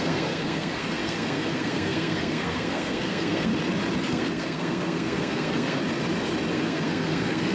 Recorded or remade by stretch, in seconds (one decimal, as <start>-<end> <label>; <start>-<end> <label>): 0.0-3.5 remade; 3.5-4.1 recorded; 4.1-5.8 remade; 5.8-6.5 recorded; 6.5-7.5 remade